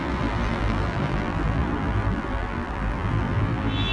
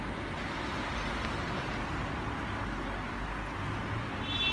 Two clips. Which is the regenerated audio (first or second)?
first